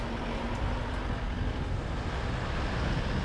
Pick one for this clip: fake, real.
real